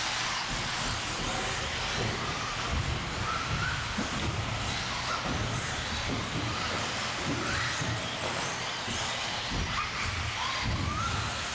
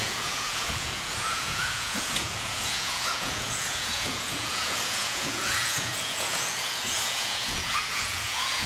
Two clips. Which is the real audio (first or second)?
first